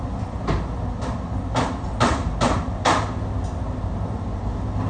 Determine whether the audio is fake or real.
real